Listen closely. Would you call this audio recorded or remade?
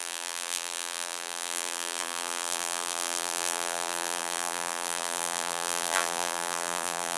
remade